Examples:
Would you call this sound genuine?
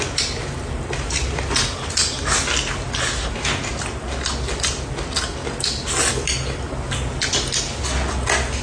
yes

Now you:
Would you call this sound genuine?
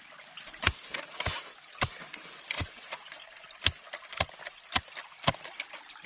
yes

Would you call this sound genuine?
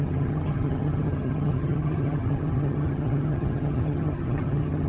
no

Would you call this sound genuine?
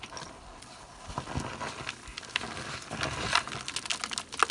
yes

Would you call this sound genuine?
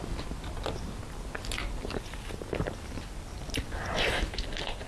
yes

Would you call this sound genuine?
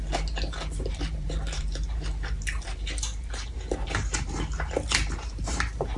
no